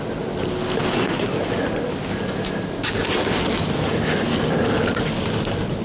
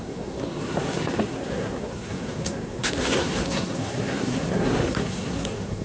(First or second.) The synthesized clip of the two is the second